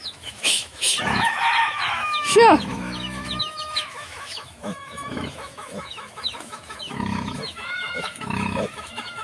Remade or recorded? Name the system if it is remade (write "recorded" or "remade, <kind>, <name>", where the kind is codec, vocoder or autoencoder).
remade, autoencoder, DAC-VAE